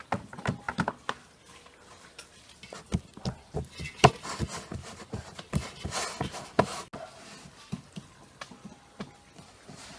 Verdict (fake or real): real